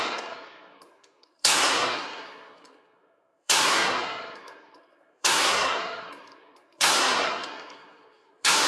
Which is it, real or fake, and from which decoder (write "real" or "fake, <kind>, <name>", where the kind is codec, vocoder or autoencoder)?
fake, codec, SNAC